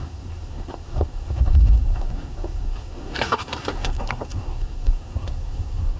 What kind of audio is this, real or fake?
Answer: fake